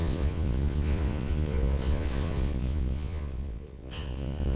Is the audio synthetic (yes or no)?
yes